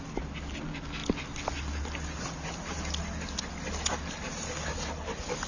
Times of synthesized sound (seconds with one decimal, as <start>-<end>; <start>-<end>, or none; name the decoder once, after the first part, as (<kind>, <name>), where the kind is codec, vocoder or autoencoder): none